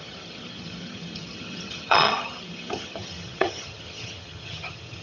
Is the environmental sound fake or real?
fake